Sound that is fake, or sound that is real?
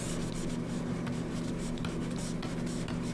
real